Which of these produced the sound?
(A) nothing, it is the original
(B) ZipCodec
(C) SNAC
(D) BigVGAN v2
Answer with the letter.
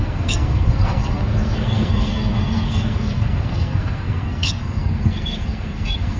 C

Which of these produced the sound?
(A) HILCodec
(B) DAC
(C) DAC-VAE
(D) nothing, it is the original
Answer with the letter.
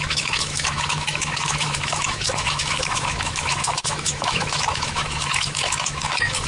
C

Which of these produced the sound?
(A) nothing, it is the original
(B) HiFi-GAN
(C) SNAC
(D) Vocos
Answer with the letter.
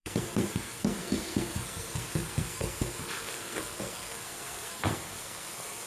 C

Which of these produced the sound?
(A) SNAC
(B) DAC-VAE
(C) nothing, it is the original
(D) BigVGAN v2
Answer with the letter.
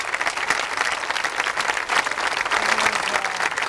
C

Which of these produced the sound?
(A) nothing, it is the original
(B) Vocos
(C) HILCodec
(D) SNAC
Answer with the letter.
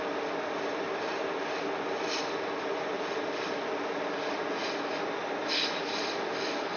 A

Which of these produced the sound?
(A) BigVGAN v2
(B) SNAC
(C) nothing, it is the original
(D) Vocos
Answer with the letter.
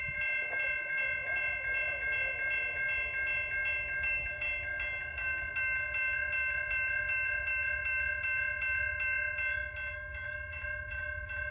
C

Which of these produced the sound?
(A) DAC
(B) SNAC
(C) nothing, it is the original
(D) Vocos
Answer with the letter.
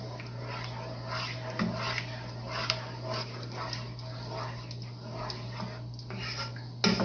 C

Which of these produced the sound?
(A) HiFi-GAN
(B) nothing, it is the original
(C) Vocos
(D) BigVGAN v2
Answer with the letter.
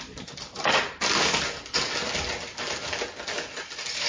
B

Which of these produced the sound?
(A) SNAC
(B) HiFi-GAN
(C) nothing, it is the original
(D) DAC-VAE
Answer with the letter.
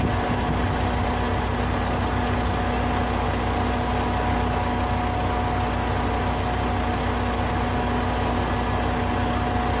C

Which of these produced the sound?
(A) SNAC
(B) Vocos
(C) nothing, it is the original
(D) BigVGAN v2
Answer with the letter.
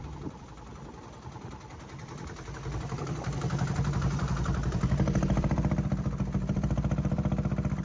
D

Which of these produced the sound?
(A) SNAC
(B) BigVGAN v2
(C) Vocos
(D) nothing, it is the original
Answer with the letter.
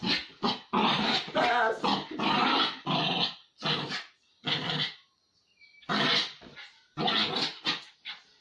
D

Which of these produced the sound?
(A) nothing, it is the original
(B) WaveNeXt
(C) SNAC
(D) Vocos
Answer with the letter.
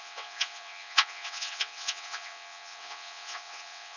B